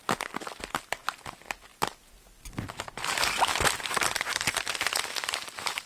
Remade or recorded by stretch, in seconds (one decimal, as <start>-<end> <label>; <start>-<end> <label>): 0.0-5.9 recorded